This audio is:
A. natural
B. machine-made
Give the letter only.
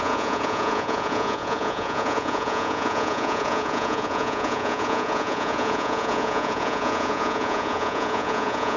B